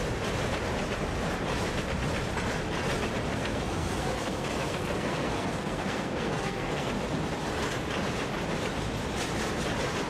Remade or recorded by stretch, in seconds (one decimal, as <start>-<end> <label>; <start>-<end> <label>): 0.0-3.3 recorded; 3.3-6.9 remade; 6.9-10.1 recorded